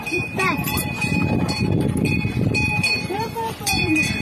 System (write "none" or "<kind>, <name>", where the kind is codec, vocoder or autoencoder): vocoder, BigVGAN v2